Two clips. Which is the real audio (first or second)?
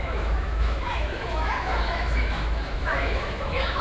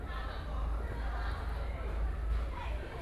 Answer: second